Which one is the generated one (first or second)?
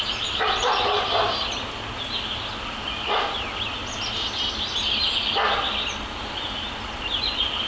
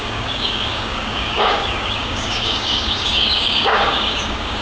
second